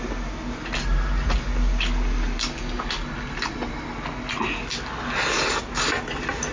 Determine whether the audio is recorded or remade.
recorded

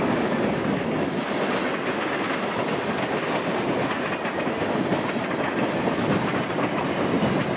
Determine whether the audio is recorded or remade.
recorded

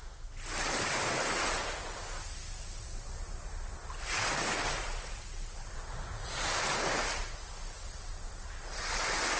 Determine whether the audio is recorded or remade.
recorded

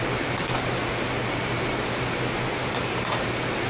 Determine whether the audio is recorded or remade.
recorded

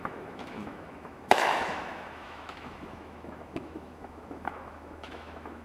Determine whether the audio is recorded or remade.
remade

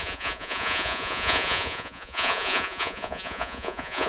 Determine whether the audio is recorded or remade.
remade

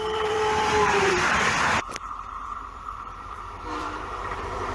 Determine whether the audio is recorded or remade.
remade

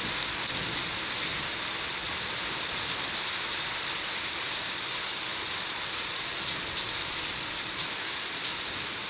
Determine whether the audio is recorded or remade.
recorded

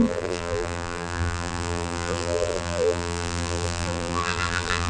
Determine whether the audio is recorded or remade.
remade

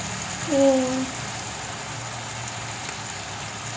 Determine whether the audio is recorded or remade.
recorded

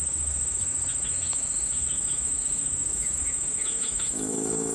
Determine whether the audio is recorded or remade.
remade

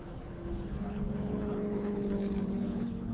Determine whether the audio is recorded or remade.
remade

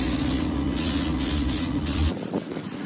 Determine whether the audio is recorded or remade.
remade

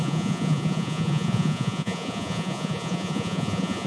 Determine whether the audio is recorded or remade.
remade